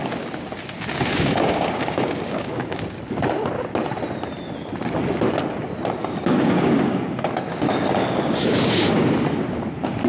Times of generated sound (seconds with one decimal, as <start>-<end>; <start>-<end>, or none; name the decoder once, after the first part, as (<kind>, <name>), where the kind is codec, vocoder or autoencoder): 1.1-2.8 (codec, DAC); 6.0-9.1